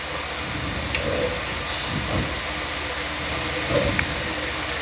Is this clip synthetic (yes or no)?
no